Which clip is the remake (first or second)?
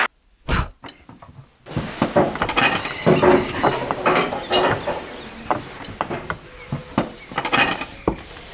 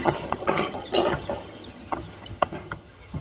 second